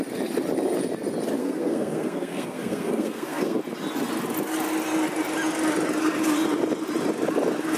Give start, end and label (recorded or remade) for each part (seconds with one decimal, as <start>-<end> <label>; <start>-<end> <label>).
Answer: 0.0-1.4 recorded; 1.4-3.6 remade; 3.6-7.8 recorded